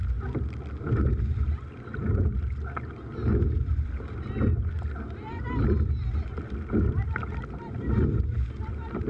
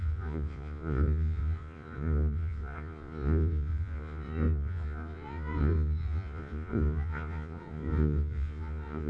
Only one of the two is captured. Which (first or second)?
first